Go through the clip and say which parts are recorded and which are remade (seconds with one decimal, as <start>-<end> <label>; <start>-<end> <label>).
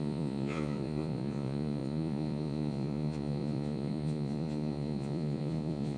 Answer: 0.0-6.0 remade